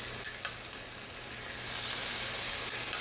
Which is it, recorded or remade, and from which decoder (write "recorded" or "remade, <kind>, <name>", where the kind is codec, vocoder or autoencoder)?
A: recorded